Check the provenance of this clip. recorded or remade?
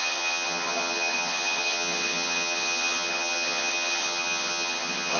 remade